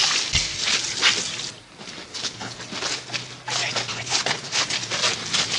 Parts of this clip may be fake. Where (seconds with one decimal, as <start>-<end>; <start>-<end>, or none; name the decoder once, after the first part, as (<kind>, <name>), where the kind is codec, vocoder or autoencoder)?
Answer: 2.1-2.6 (codec, HILCodec); 3.9-4.6